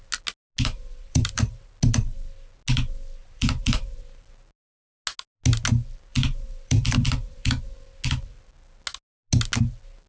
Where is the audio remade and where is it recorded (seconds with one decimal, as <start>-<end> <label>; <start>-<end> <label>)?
0.0-1.0 recorded; 1.0-1.7 remade; 1.7-3.2 recorded; 3.2-3.9 remade; 3.9-6.1 recorded; 6.1-7.5 remade; 7.5-10.1 recorded